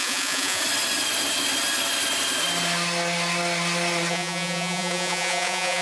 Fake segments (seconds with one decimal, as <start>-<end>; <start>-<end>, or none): 0.0-0.6; 4.1-5.8

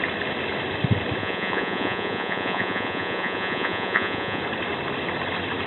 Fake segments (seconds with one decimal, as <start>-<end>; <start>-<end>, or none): 1.2-4.4

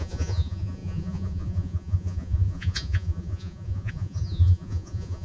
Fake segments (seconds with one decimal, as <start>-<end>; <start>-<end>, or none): 0.0-5.2